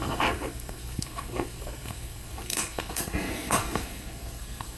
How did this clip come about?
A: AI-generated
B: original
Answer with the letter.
A